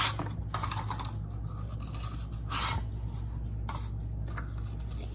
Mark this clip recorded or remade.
recorded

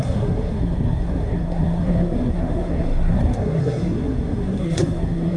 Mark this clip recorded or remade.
remade